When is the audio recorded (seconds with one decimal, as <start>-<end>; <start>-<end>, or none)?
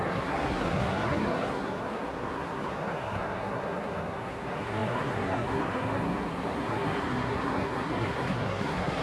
none